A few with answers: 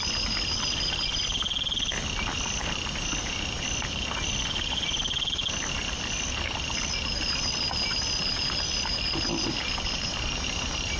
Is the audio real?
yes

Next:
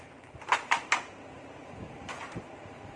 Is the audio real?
no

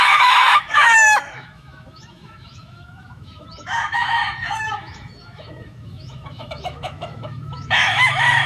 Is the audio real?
no